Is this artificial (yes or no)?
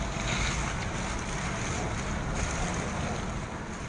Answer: no